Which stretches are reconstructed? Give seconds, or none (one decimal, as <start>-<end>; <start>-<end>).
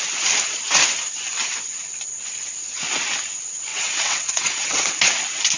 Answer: 3.7-4.9